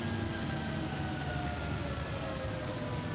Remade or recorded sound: recorded